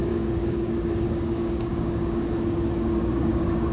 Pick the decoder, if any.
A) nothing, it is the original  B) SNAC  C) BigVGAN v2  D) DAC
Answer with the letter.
D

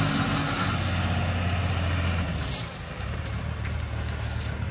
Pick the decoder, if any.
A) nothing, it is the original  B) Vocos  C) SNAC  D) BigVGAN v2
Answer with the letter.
A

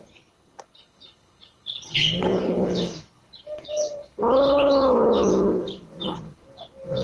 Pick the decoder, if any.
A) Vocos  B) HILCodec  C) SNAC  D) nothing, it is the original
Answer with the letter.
B